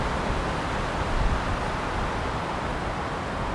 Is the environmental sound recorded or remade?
recorded